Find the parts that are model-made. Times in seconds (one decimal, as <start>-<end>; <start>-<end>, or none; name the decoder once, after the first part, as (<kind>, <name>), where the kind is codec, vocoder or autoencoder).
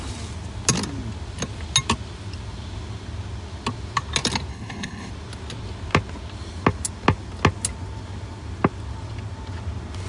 4.5-5.1 (codec, HILCodec)